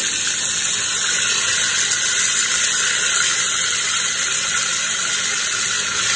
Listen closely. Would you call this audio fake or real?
real